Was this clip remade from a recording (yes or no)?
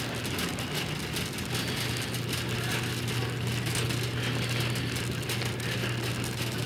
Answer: no